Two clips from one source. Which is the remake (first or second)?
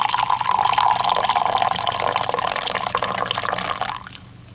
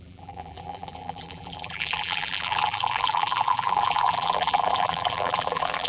second